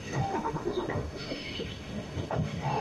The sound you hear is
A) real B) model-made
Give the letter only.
B